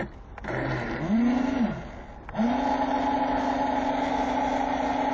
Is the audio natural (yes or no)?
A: yes